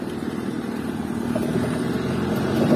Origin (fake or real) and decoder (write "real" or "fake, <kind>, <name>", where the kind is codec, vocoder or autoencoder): real